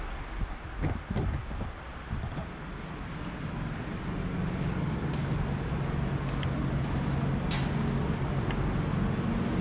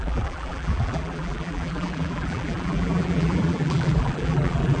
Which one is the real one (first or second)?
first